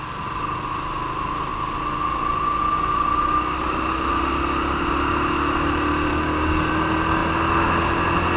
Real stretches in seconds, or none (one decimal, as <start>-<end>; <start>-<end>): 0.0-6.1; 6.7-8.4